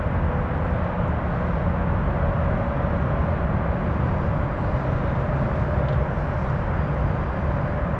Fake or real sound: real